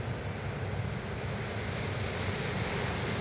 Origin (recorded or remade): recorded